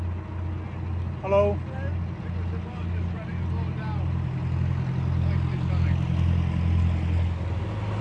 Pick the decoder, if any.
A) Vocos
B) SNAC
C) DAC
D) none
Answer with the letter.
D